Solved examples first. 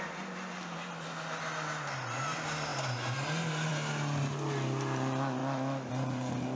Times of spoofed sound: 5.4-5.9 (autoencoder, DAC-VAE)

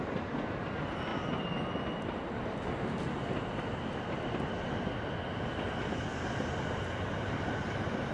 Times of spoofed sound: none

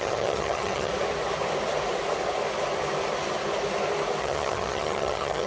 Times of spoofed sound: 0.0-0.9 (vocoder, HiFi-GAN); 4.2-5.5

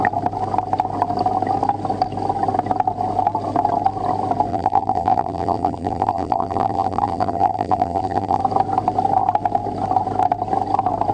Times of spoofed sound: 4.5-8.4 (vocoder, BigVGAN v2)

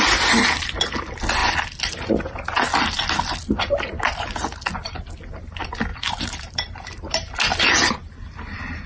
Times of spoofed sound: 5.9-6.9 (vocoder, BigVGAN v2)

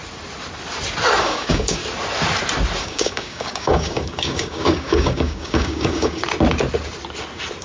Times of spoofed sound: 1.2-1.8 (codec, DAC); 2.8-6.2

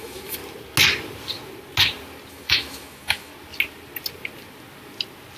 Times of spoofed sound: 0.0-0.4 (autoencoder, DAC-VAE); 2.3-3.3